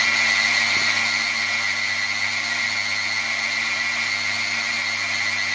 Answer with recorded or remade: recorded